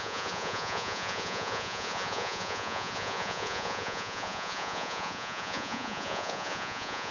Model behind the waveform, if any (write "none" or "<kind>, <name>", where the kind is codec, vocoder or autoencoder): vocoder, Vocos